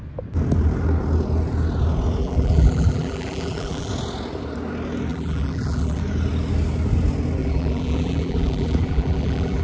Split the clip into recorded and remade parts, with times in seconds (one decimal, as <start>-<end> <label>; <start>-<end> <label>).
0.0-2.2 recorded; 2.2-3.9 remade; 3.9-5.1 recorded; 5.1-6.0 remade; 6.0-7.4 recorded; 7.4-9.6 remade